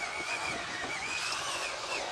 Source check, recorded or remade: remade